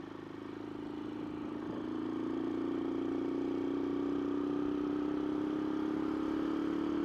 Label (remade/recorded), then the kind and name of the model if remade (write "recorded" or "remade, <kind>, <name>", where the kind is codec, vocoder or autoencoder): recorded